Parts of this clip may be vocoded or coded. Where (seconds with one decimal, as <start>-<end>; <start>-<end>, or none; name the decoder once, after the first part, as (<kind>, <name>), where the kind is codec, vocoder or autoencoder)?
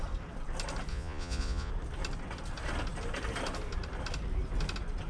0.9-1.7 (vocoder, Vocos)